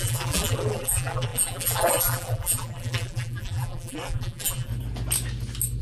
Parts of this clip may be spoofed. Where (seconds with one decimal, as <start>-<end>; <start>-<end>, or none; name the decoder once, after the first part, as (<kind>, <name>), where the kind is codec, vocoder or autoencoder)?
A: 0.0-4.7 (vocoder, BigVGAN v2)

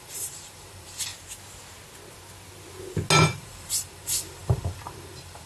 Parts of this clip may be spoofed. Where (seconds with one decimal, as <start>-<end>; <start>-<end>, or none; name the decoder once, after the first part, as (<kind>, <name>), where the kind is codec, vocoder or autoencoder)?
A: 0.0-1.1 (vocoder, BigVGAN v2); 3.2-5.5

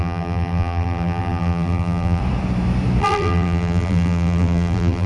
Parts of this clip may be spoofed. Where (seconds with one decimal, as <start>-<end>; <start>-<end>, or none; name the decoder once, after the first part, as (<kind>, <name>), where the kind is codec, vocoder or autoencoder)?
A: 0.0-2.2 (vocoder, BigVGAN v2); 3.0-5.1

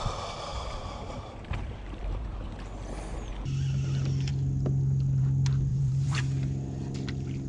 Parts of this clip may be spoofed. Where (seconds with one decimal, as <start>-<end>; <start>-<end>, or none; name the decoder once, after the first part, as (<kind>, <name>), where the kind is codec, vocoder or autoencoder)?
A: 0.5-2.5 (vocoder, BigVGAN v2); 5.7-6.2

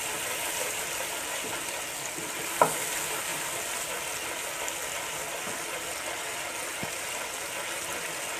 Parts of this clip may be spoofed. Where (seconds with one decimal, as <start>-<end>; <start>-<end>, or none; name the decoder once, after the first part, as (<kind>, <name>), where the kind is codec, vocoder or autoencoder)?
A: none

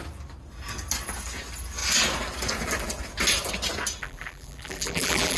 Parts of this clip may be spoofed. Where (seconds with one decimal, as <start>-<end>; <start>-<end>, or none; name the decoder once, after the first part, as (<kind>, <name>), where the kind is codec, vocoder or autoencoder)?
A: 4.0-5.4 (vocoder, BigVGAN v2)

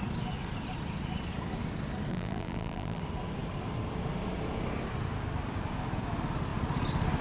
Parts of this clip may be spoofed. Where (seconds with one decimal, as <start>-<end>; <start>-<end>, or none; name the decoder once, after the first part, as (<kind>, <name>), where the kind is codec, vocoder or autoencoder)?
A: 2.1-3.0 (vocoder, BigVGAN v2)